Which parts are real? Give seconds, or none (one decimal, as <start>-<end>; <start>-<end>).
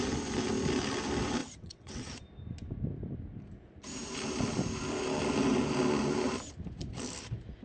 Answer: 0.0-1.4; 2.1-7.6